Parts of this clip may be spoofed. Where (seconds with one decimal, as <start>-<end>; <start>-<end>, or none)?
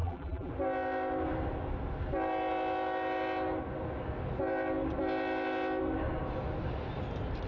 0.0-0.5